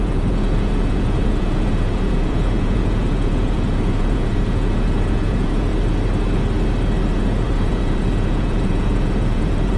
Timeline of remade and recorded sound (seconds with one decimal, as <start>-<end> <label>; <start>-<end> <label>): 0.0-5.7 remade; 5.7-7.1 recorded; 7.1-9.8 remade